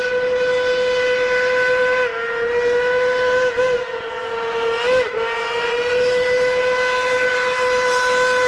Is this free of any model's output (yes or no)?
yes